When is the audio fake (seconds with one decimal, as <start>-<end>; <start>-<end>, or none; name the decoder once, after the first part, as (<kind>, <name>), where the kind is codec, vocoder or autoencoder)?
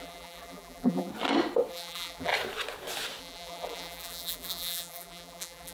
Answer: 0.0-1.1 (vocoder, BigVGAN v2); 1.7-2.3; 3.2-5.7